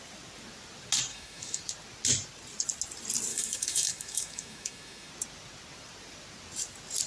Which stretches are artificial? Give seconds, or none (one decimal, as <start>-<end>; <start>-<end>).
1.1-1.6; 3.3-5.1